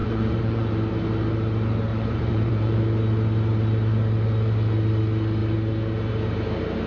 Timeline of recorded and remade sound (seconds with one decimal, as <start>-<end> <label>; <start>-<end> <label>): 0.0-0.7 remade; 0.7-1.9 recorded; 1.9-2.8 remade; 2.8-6.9 recorded